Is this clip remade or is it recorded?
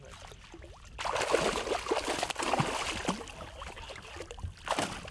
recorded